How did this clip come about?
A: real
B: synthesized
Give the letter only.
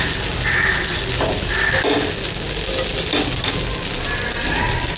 A